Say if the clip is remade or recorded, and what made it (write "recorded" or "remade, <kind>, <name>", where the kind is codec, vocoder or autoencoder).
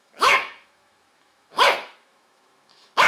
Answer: remade, autoencoder, DAC-VAE